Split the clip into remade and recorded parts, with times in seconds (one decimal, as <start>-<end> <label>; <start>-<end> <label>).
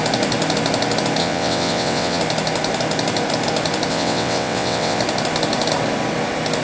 0.0-1.2 recorded; 1.2-2.2 remade; 2.2-3.9 recorded; 3.9-5.0 remade; 5.0-6.6 recorded